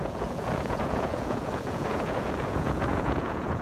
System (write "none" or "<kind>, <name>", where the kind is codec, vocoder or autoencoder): vocoder, Vocos